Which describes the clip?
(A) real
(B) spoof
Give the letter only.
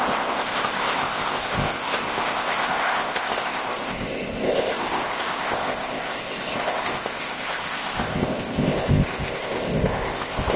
B